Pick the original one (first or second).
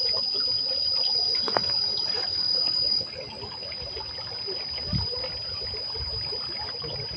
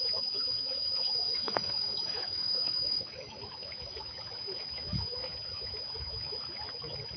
first